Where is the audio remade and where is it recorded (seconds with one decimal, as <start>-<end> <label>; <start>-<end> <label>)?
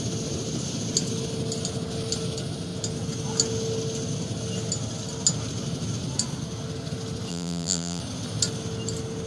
0.0-7.3 recorded; 7.3-8.0 remade; 8.0-9.3 recorded